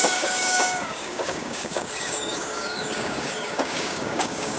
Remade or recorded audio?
remade